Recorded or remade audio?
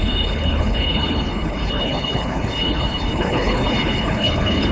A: remade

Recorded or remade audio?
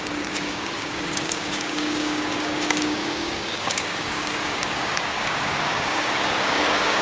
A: remade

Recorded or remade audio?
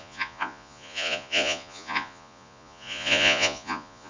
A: remade